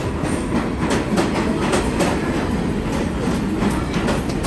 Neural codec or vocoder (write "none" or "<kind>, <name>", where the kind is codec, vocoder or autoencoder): none